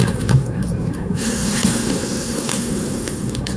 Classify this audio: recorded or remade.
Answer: remade